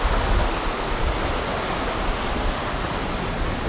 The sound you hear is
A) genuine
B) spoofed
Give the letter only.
A